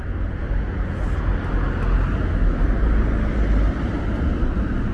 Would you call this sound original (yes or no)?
yes